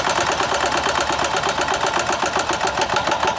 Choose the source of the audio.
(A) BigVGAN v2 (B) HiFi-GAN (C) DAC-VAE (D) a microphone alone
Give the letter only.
D